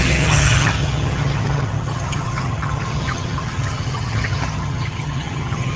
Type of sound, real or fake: fake